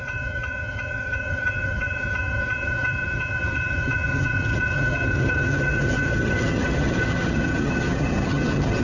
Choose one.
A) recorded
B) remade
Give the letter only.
B